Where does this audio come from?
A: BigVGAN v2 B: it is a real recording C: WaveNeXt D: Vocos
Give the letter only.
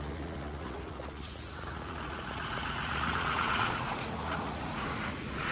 D